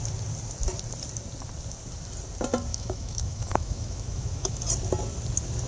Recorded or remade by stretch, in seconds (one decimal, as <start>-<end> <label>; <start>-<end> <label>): 0.0-2.7 recorded; 2.7-4.6 remade; 4.6-5.7 recorded